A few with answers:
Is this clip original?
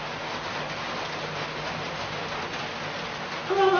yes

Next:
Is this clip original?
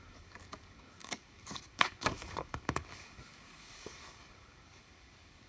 no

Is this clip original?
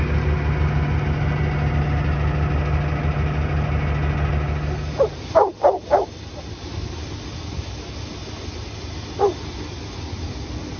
yes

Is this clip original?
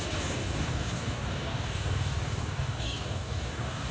no